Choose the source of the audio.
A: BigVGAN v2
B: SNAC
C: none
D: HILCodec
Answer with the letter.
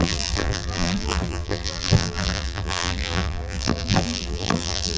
A